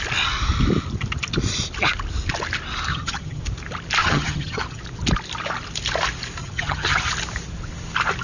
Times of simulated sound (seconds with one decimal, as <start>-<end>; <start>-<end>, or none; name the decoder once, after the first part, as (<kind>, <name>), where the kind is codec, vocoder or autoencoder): 2.9-3.4 (vocoder, HiFi-GAN); 4.0-4.8; 6.4-7.1